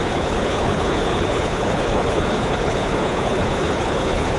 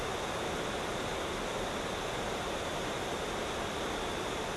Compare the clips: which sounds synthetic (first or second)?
first